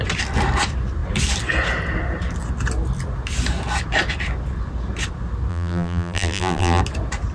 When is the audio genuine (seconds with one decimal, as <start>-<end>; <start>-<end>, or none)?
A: 0.0-5.5; 6.8-7.3